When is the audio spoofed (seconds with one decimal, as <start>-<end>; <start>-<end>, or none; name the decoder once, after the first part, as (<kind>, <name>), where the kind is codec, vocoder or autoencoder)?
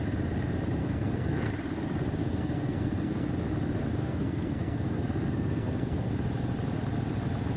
0.8-1.5 (codec, SNAC); 2.2-3.3; 4.0-6.1